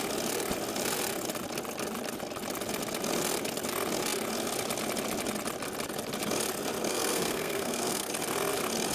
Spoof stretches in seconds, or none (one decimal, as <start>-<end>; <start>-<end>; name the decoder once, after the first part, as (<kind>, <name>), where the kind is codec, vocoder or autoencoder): 6.9-8.1 (codec, SNAC)